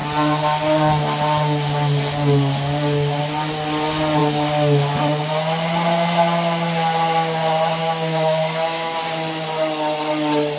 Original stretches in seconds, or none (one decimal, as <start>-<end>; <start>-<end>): 0.0-7.8; 9.0-10.6